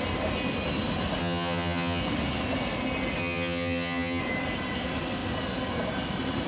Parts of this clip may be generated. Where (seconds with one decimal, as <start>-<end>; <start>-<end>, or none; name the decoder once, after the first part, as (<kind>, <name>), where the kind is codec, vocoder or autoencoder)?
1.2-2.0 (vocoder, HiFi-GAN); 3.2-4.2

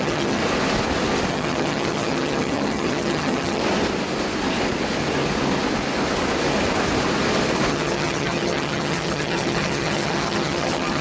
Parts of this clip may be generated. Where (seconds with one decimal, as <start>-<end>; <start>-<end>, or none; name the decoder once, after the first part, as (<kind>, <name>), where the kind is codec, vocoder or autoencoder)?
0.0-0.4 (vocoder, HiFi-GAN); 1.3-3.6; 7.7-11.0

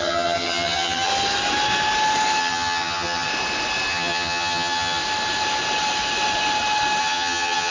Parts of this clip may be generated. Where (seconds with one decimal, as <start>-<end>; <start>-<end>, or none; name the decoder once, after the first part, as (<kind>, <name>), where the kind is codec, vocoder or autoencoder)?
0.0-1.1 (vocoder, HiFi-GAN); 2.4-3.3; 3.9-5.0; 7.0-7.7

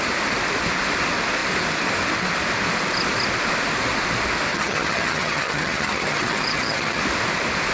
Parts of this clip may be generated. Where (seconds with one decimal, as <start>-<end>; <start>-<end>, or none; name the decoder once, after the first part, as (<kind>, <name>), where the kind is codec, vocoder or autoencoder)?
4.5-7.0 (vocoder, HiFi-GAN)

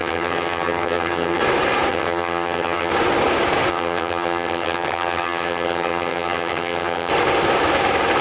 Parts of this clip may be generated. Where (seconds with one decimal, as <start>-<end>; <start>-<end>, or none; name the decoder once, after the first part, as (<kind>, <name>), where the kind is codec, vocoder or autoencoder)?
0.0-1.4 (vocoder, HiFi-GAN); 1.9-2.9; 3.7-7.1

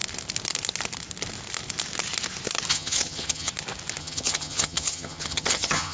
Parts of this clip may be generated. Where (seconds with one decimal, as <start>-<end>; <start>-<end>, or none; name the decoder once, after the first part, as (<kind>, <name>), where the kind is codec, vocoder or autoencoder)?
2.7-3.5 (vocoder, HiFi-GAN); 4.0-5.9

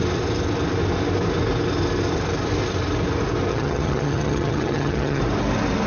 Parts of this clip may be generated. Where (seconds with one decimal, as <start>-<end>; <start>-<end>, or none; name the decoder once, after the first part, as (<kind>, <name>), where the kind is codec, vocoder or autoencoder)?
3.5-5.2 (vocoder, HiFi-GAN)

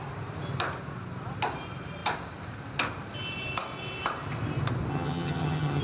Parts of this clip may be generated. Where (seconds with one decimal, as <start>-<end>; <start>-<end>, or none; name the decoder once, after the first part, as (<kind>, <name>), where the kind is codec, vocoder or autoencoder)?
4.9-5.8 (vocoder, HiFi-GAN)